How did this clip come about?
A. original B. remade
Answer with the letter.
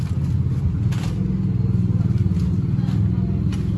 A